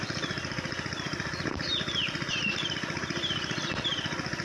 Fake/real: real